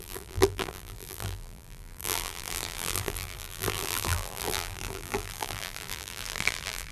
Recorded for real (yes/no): no